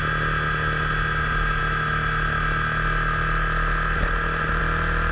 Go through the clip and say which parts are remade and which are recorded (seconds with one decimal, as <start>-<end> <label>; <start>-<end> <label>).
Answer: 0.0-5.1 recorded